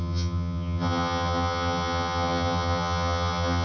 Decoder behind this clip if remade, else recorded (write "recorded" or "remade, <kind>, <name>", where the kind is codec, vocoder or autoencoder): remade, vocoder, HiFi-GAN